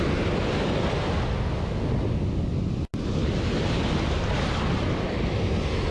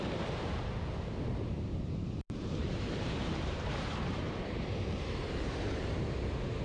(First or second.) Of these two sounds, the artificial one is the second